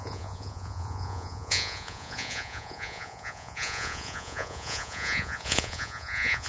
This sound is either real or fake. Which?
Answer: fake